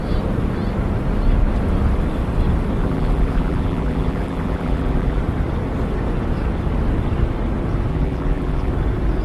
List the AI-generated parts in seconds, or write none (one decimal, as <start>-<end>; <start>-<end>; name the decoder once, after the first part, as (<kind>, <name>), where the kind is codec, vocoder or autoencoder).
2.8-5.2 (vocoder, BigVGAN v2); 7.9-8.7